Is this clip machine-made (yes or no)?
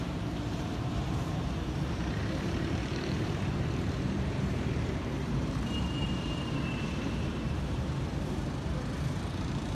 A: yes